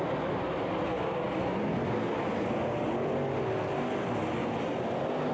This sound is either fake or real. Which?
real